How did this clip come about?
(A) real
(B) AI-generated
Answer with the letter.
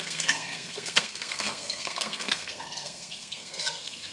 B